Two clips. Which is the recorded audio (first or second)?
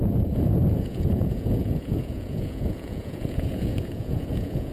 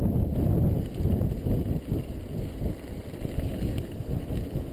second